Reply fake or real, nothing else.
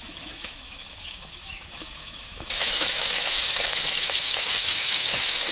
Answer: fake